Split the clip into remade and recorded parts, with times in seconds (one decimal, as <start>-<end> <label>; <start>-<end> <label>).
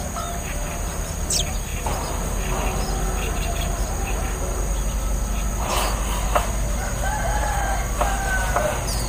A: 0.0-9.1 recorded